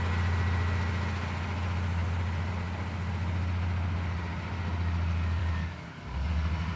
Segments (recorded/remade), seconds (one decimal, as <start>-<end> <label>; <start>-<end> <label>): 0.0-5.4 recorded; 5.4-6.3 remade; 6.3-6.8 recorded